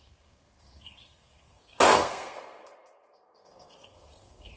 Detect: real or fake fake